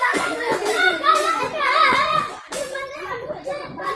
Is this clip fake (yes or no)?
yes